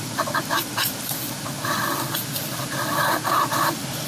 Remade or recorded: recorded